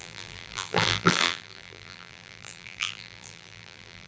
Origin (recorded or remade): remade